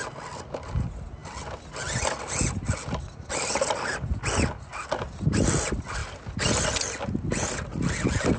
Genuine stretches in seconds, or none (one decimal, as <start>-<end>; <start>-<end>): 0.0-8.4